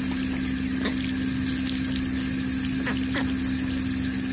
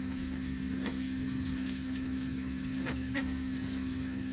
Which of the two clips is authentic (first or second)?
first